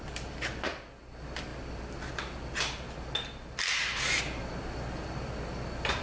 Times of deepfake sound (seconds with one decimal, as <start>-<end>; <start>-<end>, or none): none